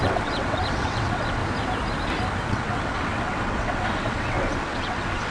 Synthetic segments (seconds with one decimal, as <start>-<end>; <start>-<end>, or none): 0.0-1.4; 2.5-5.3